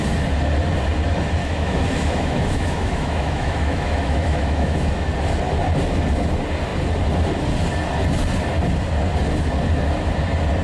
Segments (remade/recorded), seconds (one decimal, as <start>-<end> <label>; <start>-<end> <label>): 0.0-1.4 recorded; 1.4-5.1 remade; 5.1-10.6 recorded